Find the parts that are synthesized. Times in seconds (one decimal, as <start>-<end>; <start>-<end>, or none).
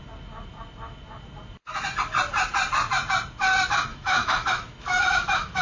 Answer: 3.9-5.6